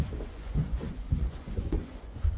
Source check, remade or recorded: remade